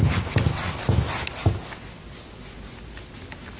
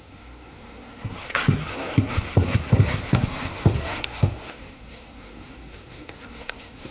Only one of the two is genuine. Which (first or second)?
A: first